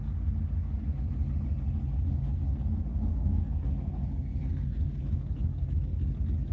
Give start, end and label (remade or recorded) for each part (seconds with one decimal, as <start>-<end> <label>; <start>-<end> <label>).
0.0-2.2 recorded; 2.2-6.1 remade; 6.1-6.5 recorded